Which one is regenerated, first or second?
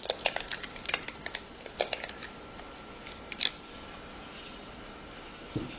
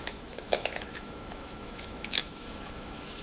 second